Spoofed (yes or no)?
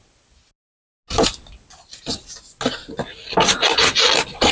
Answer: no